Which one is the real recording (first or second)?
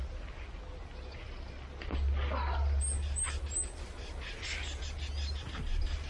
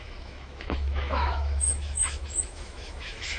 first